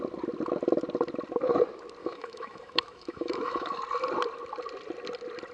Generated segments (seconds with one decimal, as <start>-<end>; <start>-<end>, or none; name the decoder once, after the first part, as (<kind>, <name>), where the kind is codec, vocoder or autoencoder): 2.0-3.8 (autoencoder, DAC-VAE)